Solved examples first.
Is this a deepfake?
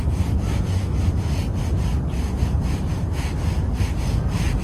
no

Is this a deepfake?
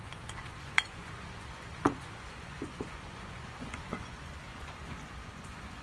yes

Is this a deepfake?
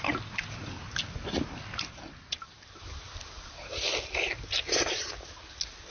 no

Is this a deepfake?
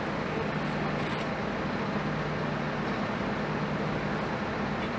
no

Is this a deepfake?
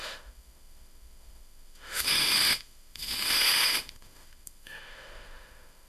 yes